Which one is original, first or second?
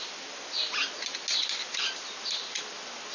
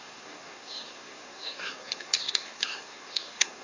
first